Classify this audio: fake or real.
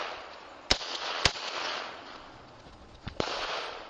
fake